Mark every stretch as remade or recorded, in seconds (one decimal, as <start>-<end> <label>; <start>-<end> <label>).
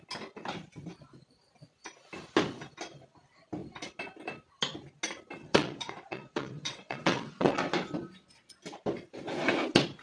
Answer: 0.0-5.4 recorded; 5.4-7.6 remade; 7.6-10.0 recorded